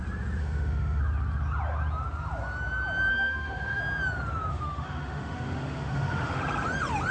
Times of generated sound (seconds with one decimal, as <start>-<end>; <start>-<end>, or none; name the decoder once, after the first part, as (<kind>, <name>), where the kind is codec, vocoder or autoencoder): 0.4-1.0 (autoencoder, DAC-VAE); 3.1-3.8; 4.5-6.4